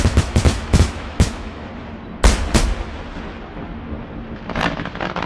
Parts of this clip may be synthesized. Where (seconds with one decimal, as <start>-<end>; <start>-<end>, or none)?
0.0-1.7